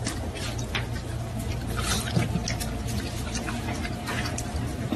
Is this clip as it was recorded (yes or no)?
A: yes